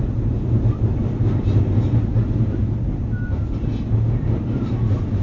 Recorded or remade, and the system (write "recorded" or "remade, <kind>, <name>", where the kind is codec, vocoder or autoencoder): recorded